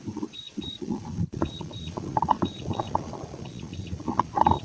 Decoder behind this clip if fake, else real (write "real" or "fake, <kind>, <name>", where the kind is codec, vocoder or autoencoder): fake, vocoder, Vocos